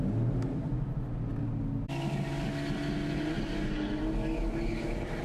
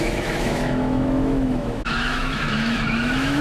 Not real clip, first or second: second